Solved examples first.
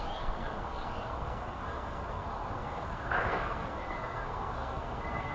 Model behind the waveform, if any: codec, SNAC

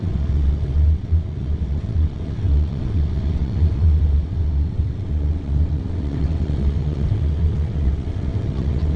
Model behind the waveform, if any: vocoder, WaveNeXt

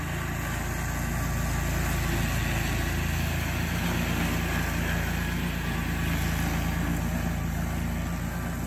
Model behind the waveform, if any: none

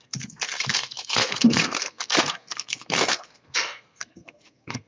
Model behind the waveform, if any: codec, SNAC